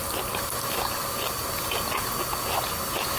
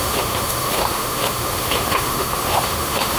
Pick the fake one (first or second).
second